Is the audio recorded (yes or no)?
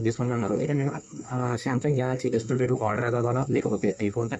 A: no